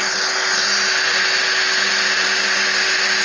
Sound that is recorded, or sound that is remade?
recorded